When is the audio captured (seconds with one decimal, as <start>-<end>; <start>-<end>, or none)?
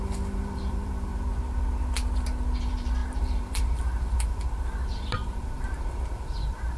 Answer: 1.1-2.6